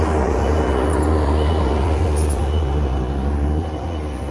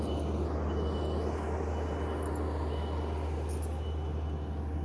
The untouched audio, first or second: second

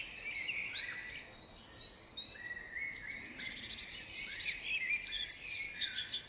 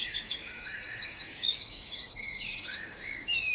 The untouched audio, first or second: first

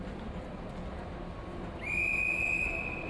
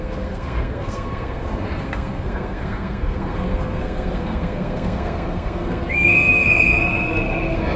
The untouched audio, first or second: first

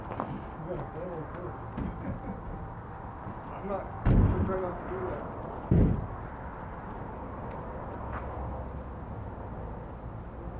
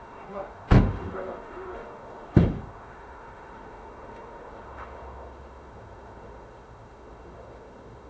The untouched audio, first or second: first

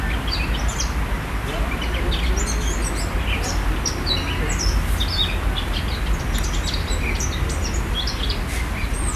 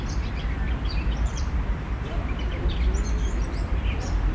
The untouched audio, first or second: first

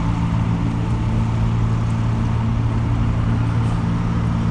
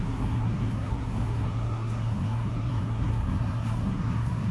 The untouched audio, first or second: first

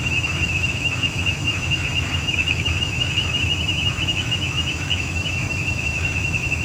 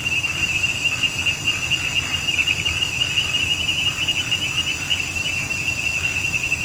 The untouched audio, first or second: second